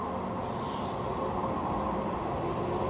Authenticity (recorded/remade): recorded